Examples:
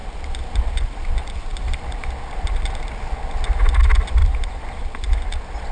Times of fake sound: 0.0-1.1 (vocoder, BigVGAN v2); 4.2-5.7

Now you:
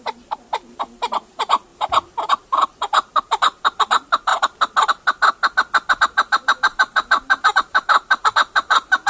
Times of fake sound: 0.0-4.3 (vocoder, BigVGAN v2); 6.0-9.1

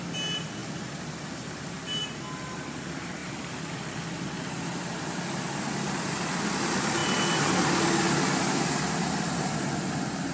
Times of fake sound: 3.2-4.0 (vocoder, BigVGAN v2)

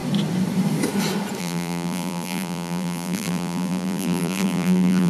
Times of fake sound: 1.4-5.1 (vocoder, BigVGAN v2)

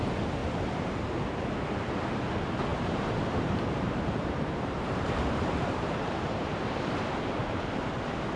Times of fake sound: 0.4-2.0 (vocoder, BigVGAN v2); 2.7-7.7

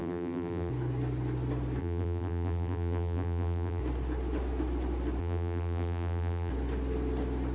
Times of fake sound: 0.0-0.7 (vocoder, BigVGAN v2); 1.8-3.8; 5.2-6.5

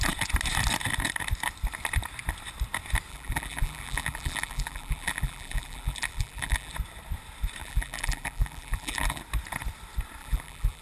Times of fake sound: 3.1-6.7 (vocoder, BigVGAN v2); 7.6-9.2; 10.2-10.8